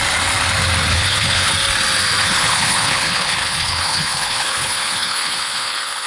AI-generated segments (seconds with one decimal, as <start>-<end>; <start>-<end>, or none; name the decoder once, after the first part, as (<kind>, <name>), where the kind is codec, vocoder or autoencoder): 0.9-1.5 (codec, HILCodec); 2.2-6.1